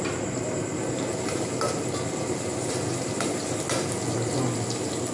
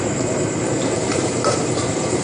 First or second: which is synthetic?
second